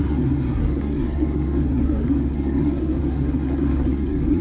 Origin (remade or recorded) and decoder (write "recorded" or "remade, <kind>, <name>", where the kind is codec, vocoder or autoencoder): remade, codec, SNAC